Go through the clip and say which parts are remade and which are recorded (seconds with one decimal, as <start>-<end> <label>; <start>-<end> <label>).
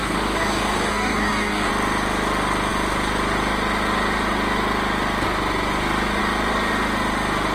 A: 0.0-1.7 remade; 1.7-7.5 recorded